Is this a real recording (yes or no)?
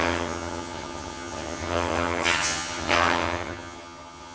no